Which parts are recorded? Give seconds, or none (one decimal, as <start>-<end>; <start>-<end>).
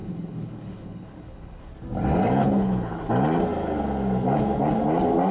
1.7-2.4; 3.1-5.3